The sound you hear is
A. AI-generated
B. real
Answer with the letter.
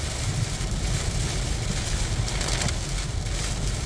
A